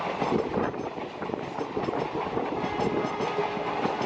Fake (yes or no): no